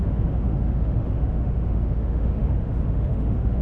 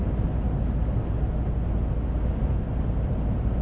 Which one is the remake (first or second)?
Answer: first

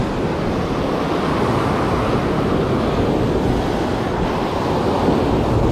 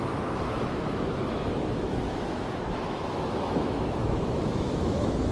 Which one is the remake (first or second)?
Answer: second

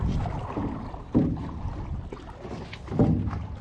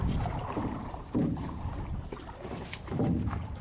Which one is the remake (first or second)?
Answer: second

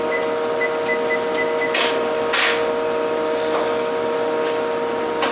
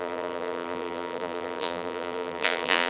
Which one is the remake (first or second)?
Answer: second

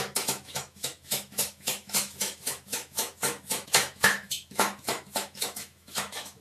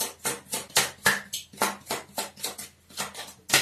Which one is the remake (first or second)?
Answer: first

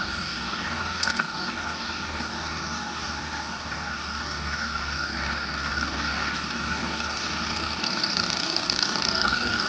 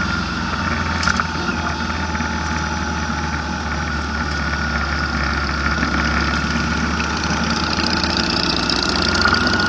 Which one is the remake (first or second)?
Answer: first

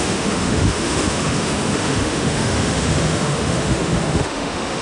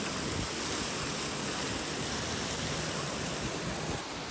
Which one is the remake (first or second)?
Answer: first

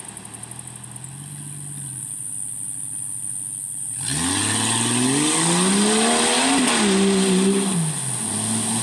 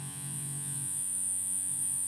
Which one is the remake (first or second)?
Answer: second